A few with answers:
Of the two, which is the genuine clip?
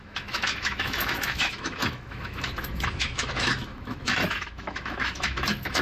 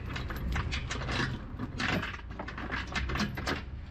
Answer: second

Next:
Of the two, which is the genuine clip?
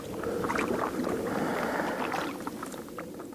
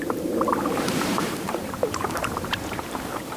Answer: first